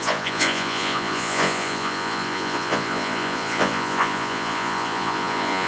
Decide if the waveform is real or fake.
fake